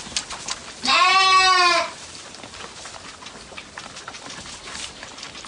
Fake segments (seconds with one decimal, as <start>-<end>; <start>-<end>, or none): none